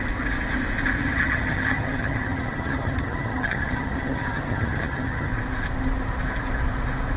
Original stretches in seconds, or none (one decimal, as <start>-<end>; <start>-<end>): 0.0-1.0; 5.3-7.2